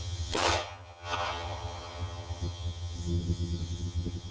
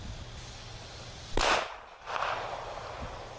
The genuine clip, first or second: second